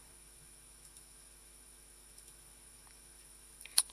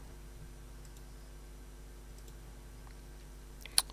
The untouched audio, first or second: second